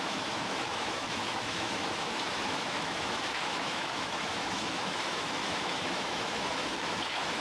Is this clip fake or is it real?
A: fake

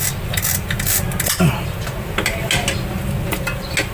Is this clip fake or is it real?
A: real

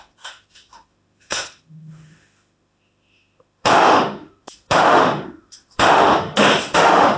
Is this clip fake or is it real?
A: fake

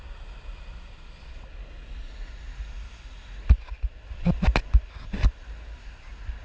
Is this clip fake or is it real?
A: real